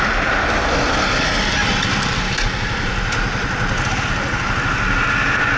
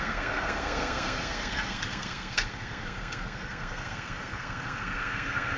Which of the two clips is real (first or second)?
first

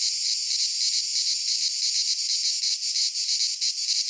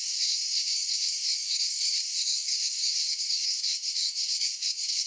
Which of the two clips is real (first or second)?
first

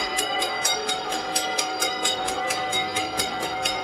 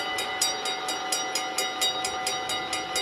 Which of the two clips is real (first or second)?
second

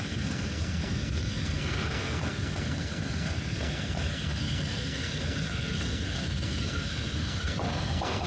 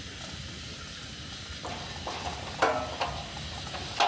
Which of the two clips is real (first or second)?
second